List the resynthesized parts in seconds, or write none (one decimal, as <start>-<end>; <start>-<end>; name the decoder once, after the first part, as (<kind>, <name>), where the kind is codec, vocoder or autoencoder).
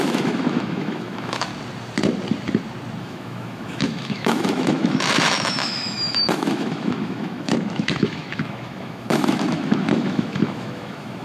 0.0-1.5 (autoencoder, DAC-VAE); 3.0-11.2